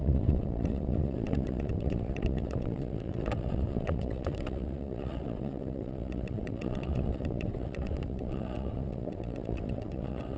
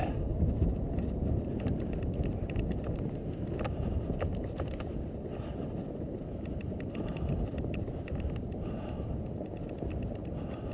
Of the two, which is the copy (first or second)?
first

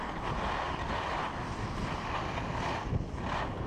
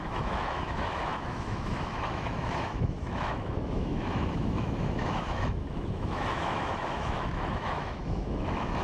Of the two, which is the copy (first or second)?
second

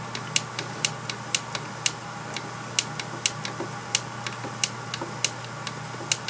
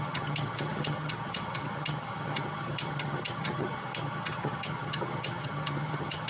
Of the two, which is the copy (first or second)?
second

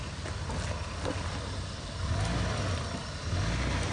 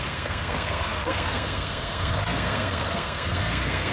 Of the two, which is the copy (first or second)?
second